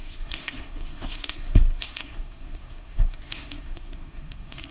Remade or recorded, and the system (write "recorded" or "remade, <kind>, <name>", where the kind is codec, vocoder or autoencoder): remade, codec, SNAC